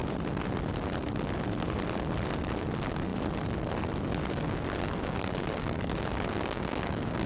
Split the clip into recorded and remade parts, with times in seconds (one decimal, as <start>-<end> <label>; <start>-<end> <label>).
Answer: 0.0-4.2 recorded; 4.2-7.3 remade